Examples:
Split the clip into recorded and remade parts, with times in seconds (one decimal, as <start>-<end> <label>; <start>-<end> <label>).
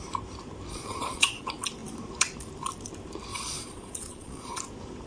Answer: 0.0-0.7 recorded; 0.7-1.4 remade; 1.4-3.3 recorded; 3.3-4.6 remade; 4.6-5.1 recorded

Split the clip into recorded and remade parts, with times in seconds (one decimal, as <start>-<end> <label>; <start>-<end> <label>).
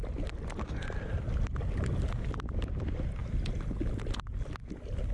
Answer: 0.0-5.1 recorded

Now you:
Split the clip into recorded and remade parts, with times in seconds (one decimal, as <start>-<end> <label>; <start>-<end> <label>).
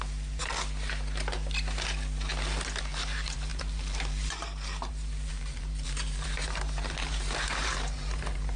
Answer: 0.0-0.4 remade; 0.4-2.8 recorded; 2.8-8.6 remade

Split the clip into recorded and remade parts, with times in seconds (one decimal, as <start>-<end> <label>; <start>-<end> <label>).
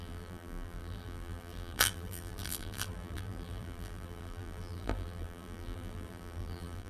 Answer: 0.0-6.9 remade